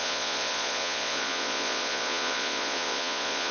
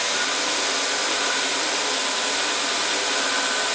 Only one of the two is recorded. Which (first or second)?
second